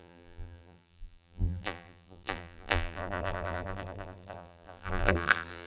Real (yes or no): no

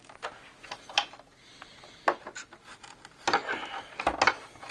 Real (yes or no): yes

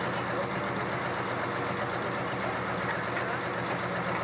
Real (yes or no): yes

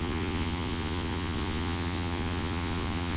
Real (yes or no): no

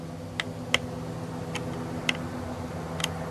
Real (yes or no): yes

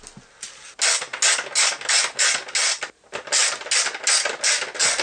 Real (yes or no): yes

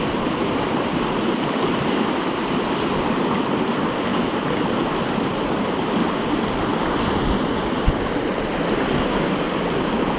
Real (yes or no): yes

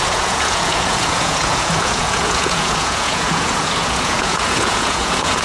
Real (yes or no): no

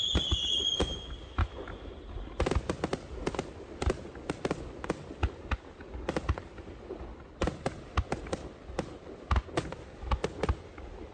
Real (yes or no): yes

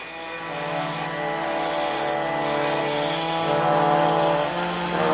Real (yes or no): yes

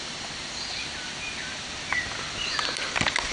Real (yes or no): no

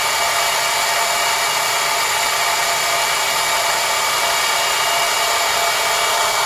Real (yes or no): yes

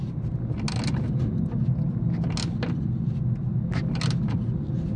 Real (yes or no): yes